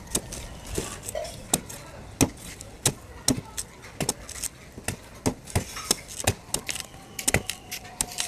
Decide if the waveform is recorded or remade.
recorded